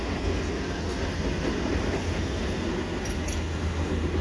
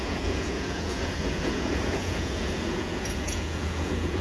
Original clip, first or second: first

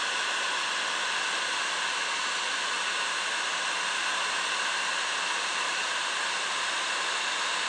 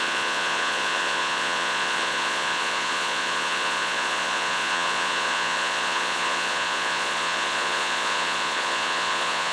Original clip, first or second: first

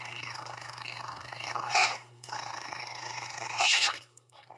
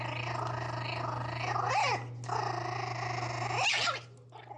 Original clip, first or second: second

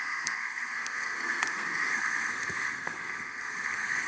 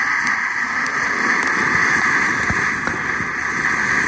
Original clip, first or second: second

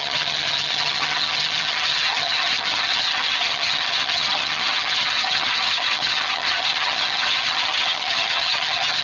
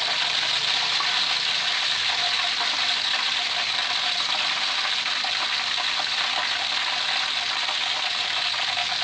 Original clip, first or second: second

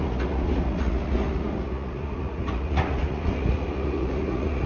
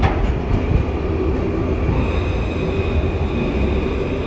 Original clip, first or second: second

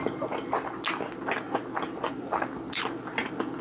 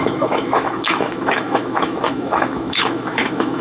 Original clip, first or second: first